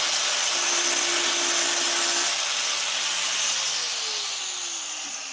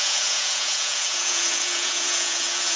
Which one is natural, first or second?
first